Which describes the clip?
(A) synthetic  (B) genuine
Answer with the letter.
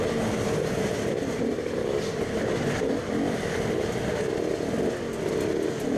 B